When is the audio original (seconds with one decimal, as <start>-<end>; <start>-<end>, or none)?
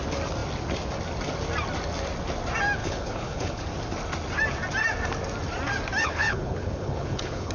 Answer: 0.0-2.8; 3.6-6.0